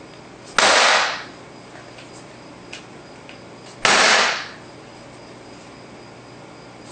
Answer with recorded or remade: recorded